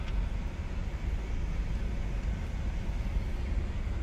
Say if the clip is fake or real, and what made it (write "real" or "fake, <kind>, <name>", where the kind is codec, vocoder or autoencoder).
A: real